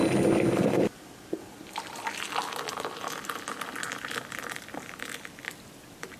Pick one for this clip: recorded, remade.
recorded